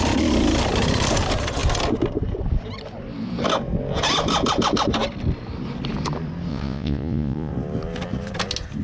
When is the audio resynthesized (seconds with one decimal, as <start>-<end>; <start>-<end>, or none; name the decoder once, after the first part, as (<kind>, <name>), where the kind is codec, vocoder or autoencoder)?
6.5-7.5 (vocoder, Vocos)